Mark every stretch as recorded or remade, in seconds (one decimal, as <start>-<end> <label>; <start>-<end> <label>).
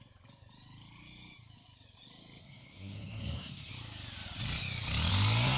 0.0-2.4 recorded; 2.4-3.7 remade; 3.7-5.6 recorded